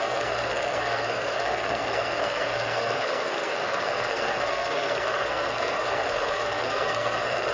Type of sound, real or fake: fake